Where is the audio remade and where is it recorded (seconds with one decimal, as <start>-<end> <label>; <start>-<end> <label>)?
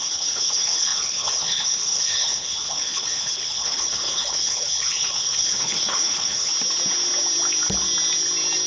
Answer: 0.0-6.5 remade; 6.5-8.7 recorded